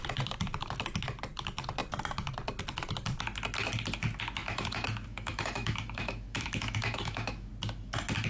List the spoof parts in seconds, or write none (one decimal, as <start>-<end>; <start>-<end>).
4.4-7.5